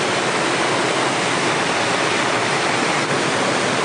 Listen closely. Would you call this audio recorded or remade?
recorded